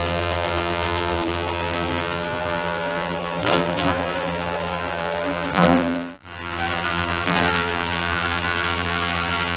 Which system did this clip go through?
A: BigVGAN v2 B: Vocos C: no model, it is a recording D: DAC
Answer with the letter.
A